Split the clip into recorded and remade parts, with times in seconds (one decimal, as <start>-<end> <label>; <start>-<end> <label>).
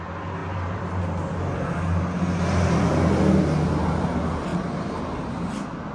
0.0-0.4 recorded; 0.4-1.0 remade; 1.0-4.5 recorded; 4.5-5.3 remade; 5.3-5.9 recorded